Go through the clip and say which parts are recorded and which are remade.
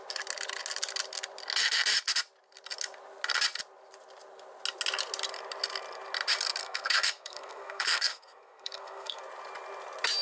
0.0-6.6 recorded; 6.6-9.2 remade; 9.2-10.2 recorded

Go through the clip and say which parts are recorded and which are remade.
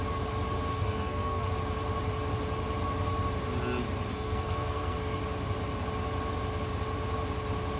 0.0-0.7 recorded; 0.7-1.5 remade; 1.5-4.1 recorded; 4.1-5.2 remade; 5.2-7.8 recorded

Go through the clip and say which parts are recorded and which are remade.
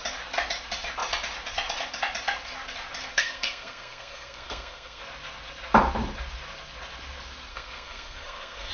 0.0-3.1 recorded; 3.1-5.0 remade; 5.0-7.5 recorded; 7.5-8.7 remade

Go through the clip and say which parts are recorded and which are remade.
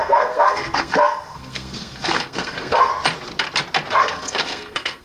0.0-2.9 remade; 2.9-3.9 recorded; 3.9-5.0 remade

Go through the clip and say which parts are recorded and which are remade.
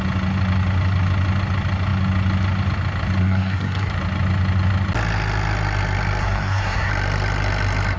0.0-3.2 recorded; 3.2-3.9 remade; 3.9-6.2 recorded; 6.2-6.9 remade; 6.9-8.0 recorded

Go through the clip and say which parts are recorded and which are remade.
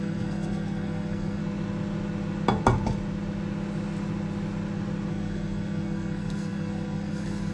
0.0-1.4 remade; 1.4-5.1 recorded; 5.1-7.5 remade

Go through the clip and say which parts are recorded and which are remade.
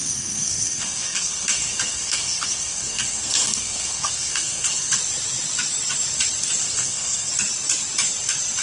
0.0-5.0 remade; 5.0-6.6 recorded; 6.6-7.3 remade; 7.3-8.6 recorded